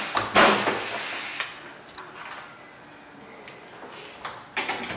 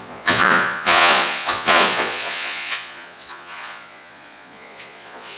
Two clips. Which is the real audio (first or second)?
first